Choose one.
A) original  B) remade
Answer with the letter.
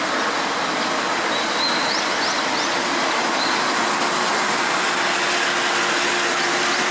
A